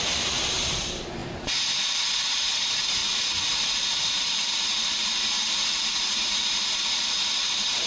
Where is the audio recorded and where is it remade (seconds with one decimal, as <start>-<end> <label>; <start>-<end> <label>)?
0.0-7.9 remade

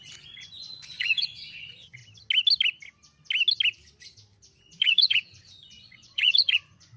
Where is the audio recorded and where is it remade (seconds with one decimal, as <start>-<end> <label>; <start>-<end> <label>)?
0.0-2.0 remade; 2.0-4.6 recorded; 4.6-7.0 remade

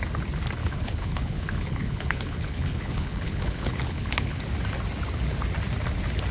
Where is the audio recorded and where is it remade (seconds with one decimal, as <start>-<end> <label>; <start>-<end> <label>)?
0.0-0.6 recorded; 0.6-4.4 remade; 4.4-6.3 recorded

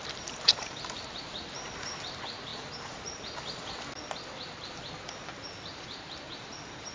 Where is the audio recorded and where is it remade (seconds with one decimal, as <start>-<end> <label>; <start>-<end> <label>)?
0.0-6.9 recorded

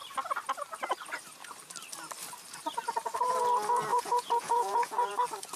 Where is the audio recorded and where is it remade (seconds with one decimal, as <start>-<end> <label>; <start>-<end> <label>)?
0.0-3.9 recorded; 3.9-5.1 remade; 5.1-5.6 recorded

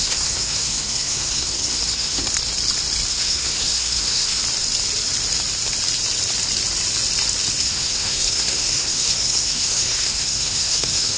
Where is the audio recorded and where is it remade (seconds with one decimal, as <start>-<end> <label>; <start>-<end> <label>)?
0.0-2.2 remade; 2.2-3.1 recorded; 3.1-4.4 remade; 4.4-7.6 recorded; 7.6-11.2 remade

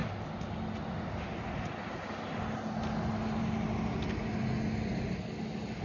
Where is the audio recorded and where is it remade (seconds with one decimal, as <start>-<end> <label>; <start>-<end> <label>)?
0.0-5.8 recorded

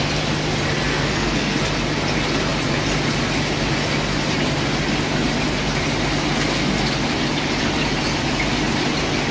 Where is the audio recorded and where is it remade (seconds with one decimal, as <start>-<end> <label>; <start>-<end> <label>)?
0.0-0.9 recorded; 0.9-1.6 remade; 1.6-9.3 recorded